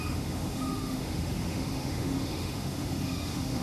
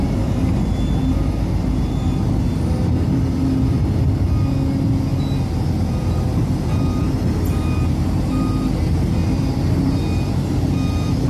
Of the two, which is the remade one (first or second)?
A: first